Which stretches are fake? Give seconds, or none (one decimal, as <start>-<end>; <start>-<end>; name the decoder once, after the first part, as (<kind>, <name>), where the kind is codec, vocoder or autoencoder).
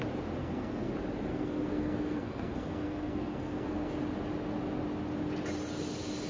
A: 0.4-0.9 (codec, SNAC); 1.3-3.9